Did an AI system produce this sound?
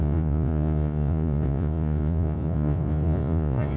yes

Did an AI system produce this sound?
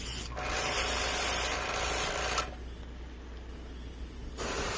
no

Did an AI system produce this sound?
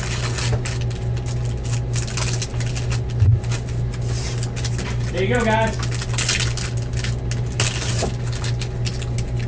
no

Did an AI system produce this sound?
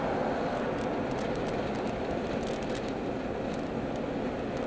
no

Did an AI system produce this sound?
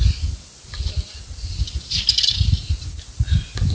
no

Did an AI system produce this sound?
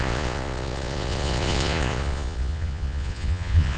yes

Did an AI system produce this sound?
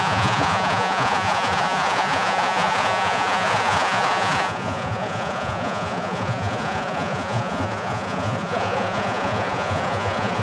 yes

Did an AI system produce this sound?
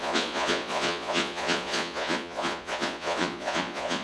yes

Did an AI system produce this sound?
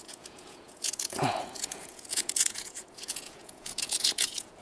yes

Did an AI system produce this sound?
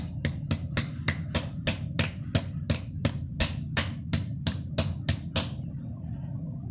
no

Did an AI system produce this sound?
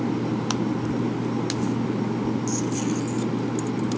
no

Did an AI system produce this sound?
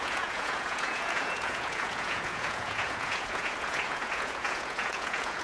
yes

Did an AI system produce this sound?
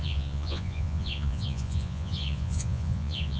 yes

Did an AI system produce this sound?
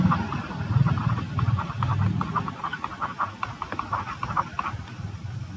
no